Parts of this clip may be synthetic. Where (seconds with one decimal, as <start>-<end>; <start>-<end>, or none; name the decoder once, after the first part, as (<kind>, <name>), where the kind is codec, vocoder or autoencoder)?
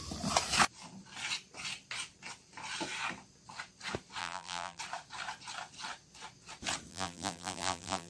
4.2-4.8 (vocoder, BigVGAN v2); 6.9-8.1